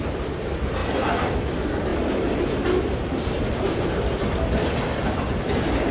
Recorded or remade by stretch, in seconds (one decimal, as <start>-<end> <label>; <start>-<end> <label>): 0.0-5.9 recorded